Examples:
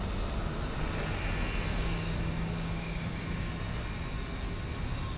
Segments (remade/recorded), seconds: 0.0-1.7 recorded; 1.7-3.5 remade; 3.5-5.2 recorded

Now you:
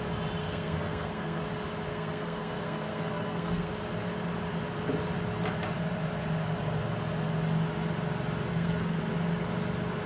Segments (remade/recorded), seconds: 0.0-0.4 recorded; 0.4-1.4 remade; 1.4-1.9 recorded; 1.9-3.7 remade; 3.7-8.5 recorded; 8.5-9.0 remade; 9.0-10.1 recorded

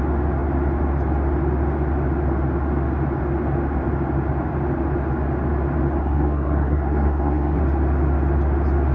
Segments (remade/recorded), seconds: 0.0-6.0 recorded; 6.0-7.6 remade; 7.6-8.9 recorded

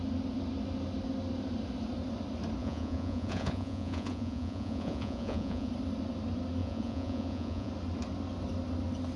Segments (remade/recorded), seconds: 0.0-2.6 recorded; 2.6-5.7 remade; 5.7-6.6 recorded; 6.6-7.7 remade; 7.7-9.2 recorded

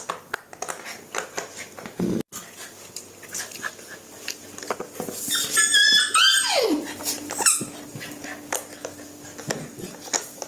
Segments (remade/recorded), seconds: 0.0-6.3 recorded; 6.3-7.0 remade; 7.0-10.5 recorded